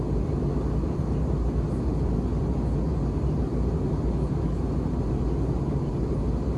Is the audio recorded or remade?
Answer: recorded